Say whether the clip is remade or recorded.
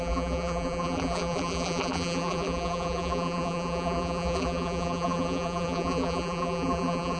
remade